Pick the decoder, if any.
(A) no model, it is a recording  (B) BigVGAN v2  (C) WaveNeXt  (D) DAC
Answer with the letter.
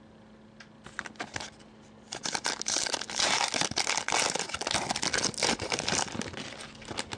A